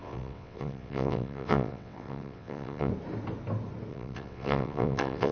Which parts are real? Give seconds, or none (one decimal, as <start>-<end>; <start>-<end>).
2.9-3.9